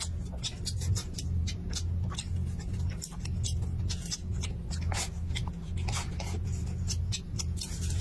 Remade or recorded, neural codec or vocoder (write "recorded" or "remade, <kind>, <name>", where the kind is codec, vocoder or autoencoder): recorded